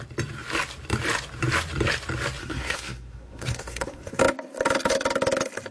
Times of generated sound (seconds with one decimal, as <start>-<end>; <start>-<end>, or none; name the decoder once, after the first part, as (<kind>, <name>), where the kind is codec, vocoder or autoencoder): 2.4-4.2 (codec, SNAC)